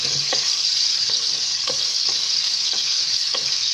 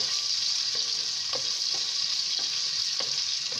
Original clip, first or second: second